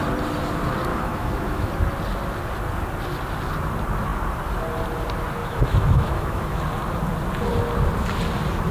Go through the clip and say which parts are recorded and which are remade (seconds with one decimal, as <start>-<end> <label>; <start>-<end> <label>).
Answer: 0.0-0.9 recorded; 0.9-1.7 remade; 1.7-5.4 recorded; 5.4-6.6 remade; 6.6-8.7 recorded